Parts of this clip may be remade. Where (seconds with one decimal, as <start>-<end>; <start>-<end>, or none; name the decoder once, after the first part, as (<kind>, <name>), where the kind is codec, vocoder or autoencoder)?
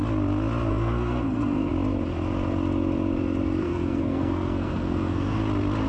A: 0.7-1.7 (codec, SNAC); 3.6-5.4